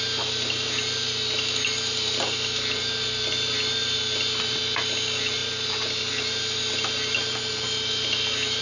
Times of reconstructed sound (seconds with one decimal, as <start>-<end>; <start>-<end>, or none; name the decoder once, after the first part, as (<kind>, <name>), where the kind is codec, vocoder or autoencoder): none